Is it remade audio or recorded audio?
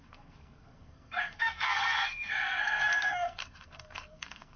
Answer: remade